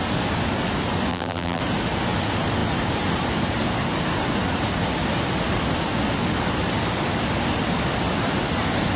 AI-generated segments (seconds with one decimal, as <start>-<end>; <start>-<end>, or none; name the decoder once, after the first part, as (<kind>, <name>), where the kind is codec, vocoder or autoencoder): 1.1-1.6 (vocoder, BigVGAN v2)